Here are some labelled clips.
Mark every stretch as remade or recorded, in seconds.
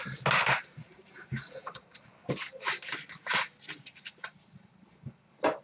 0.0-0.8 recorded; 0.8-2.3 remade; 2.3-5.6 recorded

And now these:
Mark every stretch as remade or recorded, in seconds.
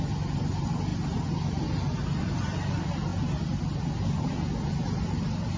0.0-5.6 recorded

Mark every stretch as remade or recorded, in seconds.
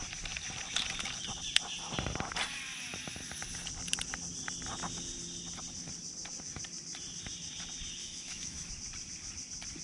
0.0-8.0 recorded; 8.0-8.7 remade; 8.7-9.8 recorded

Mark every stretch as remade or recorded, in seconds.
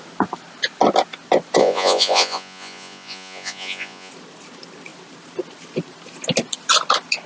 0.0-1.6 recorded; 1.6-4.1 remade; 4.1-7.3 recorded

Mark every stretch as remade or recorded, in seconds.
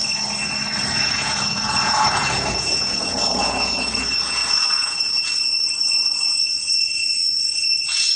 0.0-0.9 recorded; 0.9-8.2 remade